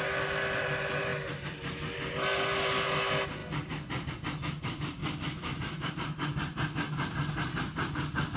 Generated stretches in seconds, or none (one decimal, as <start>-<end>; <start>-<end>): 5.0-5.9